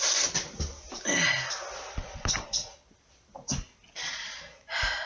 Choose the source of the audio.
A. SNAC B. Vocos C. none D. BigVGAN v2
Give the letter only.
C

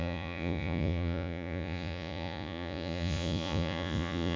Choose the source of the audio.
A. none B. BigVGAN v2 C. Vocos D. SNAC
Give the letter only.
C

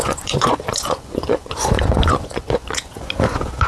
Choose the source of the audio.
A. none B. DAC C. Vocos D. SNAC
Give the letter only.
C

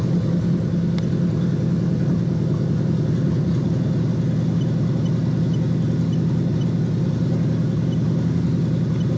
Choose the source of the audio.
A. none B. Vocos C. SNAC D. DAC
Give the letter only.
A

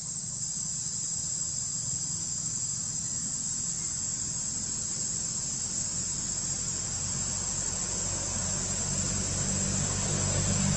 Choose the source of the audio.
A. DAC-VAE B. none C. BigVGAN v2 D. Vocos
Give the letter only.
B